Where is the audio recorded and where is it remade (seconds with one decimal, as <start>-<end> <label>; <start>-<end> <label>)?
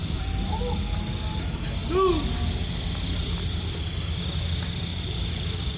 0.0-0.6 remade; 0.6-4.9 recorded; 4.9-5.8 remade